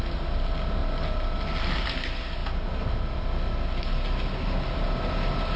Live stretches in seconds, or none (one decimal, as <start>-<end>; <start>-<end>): 0.0-5.6